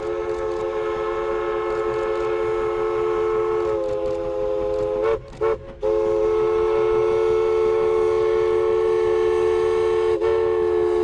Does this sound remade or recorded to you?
recorded